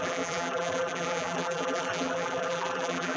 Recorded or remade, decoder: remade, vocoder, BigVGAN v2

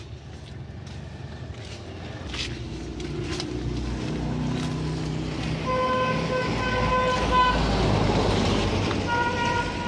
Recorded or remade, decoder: recorded